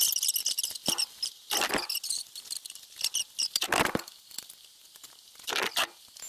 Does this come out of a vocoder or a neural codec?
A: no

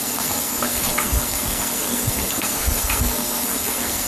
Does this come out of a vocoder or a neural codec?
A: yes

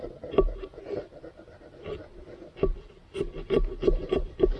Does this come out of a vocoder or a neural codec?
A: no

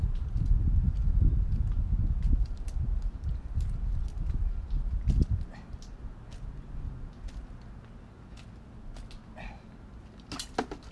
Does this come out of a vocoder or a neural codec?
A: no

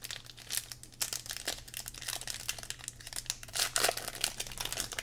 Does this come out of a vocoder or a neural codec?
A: no